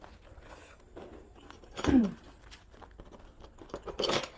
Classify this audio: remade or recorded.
recorded